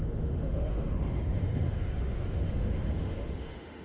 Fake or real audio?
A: fake